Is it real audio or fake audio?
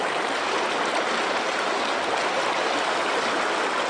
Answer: real